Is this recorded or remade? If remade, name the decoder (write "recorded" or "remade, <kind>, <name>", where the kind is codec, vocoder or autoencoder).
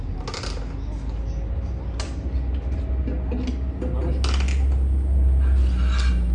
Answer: recorded